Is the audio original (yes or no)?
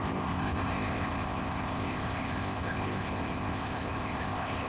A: no